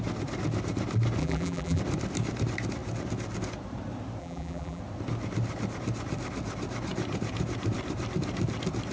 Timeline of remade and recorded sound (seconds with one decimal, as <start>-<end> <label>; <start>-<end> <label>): 0.0-1.2 recorded; 1.2-1.8 remade; 1.8-4.2 recorded; 4.2-4.8 remade; 4.8-8.9 recorded